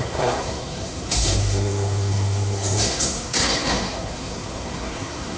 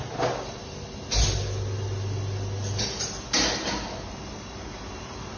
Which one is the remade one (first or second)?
first